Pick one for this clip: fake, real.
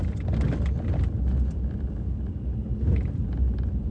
real